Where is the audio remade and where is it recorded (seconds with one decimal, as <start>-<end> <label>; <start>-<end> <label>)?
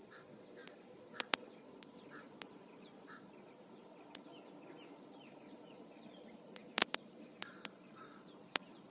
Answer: 0.0-4.3 remade; 4.3-4.9 recorded; 4.9-8.9 remade